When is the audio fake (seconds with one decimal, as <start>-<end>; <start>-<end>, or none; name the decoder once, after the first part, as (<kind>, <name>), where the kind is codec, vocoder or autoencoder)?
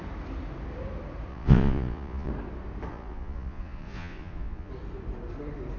1.3-2.3 (vocoder, Vocos); 2.9-4.7